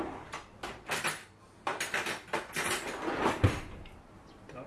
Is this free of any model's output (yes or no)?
no